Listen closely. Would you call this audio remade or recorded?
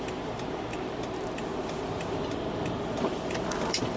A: remade